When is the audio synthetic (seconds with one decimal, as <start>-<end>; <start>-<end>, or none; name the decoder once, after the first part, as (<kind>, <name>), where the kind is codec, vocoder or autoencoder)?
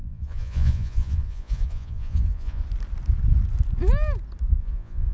0.0-2.6 (vocoder, Vocos); 4.6-5.1